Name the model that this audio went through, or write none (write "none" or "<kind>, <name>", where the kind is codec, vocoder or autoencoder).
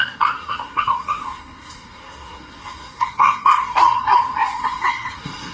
codec, SNAC